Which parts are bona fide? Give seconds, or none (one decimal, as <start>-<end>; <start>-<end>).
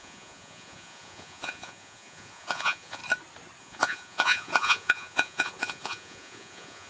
3.0-3.6